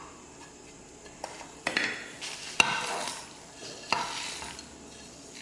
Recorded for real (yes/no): yes